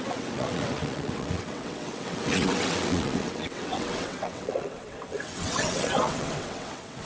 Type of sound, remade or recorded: remade